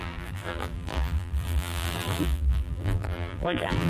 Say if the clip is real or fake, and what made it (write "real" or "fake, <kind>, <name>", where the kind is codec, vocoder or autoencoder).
fake, vocoder, BigVGAN v2